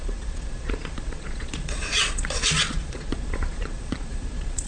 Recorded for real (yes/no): no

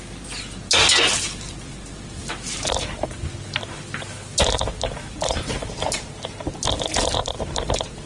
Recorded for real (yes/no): yes